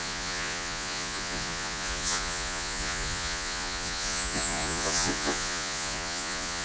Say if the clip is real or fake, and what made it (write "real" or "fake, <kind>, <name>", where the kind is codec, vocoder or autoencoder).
fake, vocoder, Vocos